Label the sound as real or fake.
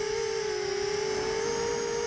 real